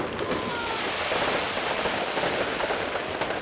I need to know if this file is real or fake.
real